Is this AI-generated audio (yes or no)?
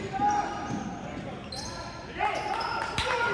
no